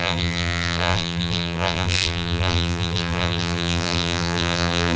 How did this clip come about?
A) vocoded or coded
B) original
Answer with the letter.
A